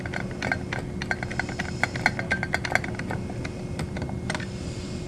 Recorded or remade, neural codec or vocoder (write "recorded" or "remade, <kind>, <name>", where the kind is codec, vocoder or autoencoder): recorded